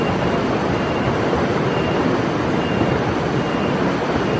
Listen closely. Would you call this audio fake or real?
real